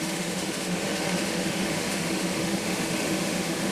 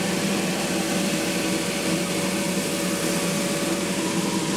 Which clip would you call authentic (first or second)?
second